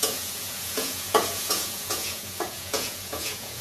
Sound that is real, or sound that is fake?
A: fake